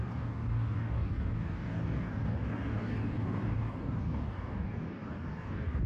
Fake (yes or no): yes